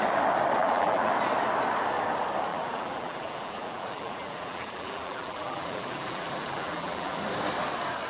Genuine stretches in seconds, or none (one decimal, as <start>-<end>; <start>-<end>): 0.0-0.6; 1.1-2.5; 7.2-8.1

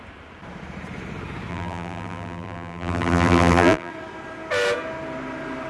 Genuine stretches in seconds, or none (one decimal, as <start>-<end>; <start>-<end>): 0.0-1.5; 3.9-5.7